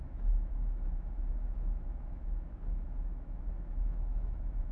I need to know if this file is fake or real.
fake